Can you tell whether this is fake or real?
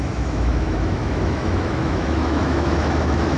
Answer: fake